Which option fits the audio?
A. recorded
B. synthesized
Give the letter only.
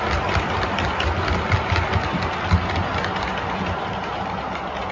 A